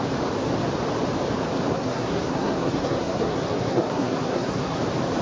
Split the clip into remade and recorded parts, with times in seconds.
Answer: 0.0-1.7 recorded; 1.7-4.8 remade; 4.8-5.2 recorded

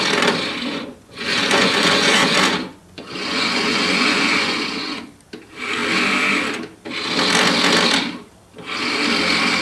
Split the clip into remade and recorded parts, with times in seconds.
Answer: 0.0-0.7 recorded; 0.7-5.1 remade; 5.1-9.6 recorded

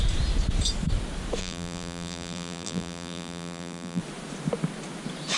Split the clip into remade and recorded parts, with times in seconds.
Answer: 0.0-1.4 recorded; 1.4-4.0 remade; 4.0-5.4 recorded

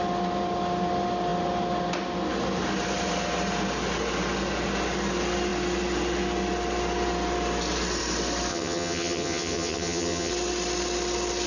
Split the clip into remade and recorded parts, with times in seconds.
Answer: 0.0-8.5 recorded; 8.5-10.3 remade; 10.3-11.5 recorded

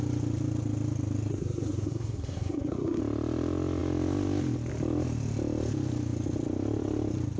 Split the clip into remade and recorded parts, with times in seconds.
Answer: 0.0-1.3 recorded; 1.3-3.0 remade; 3.0-7.4 recorded